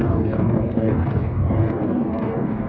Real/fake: fake